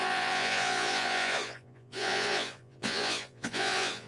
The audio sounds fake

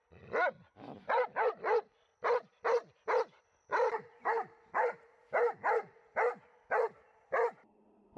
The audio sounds real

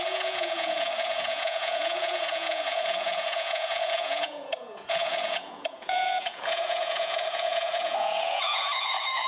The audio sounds fake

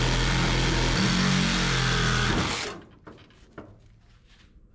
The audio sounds real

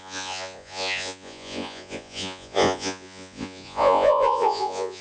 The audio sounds fake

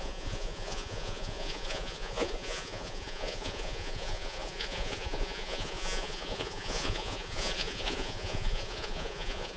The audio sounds fake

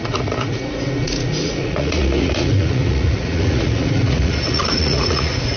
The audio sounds fake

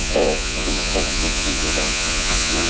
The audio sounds fake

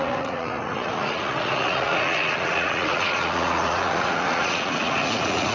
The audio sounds fake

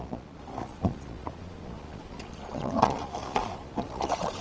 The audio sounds fake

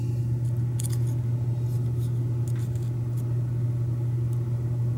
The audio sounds real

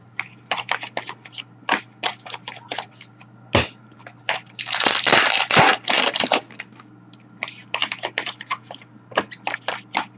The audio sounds real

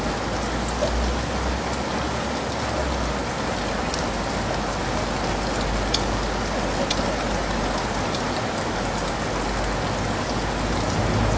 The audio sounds real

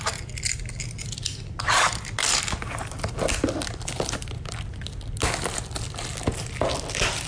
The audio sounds real